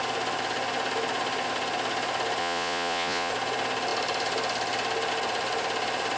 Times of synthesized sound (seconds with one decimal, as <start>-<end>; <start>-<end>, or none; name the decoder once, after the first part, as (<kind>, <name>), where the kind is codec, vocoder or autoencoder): 2.4-3.3 (vocoder, Vocos)